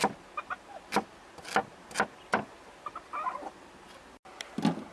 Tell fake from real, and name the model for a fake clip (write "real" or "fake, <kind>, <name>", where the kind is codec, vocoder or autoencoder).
real